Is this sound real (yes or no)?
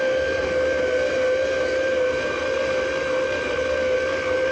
yes